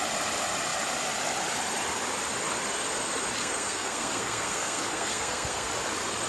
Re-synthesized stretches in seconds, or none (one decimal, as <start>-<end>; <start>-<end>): 3.4-5.7